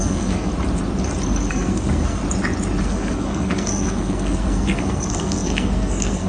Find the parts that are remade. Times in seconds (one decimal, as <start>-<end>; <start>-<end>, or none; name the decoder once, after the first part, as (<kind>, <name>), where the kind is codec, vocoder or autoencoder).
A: 0.0-0.5 (codec, SNAC); 1.5-2.2; 2.8-6.3